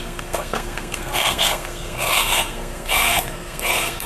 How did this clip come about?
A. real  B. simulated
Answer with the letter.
B